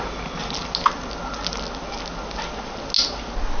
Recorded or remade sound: recorded